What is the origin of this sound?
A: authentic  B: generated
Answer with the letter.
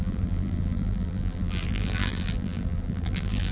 B